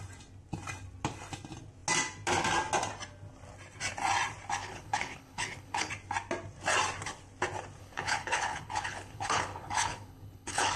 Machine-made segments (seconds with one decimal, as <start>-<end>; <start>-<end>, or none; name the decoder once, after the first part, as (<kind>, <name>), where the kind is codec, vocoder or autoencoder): 4.6-5.9 (codec, HILCodec); 7.8-10.8

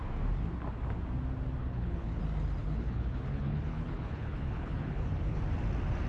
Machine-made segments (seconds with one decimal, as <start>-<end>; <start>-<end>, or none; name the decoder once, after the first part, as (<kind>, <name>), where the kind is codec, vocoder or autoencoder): 1.6-2.2 (codec, HILCodec); 2.6-5.4